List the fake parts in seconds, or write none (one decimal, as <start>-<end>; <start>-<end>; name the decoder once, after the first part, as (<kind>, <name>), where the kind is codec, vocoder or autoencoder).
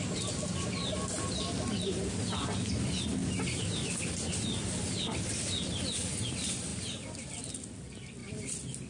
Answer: 0.8-1.4 (vocoder, BigVGAN v2); 6.7-7.3; 8.2-8.9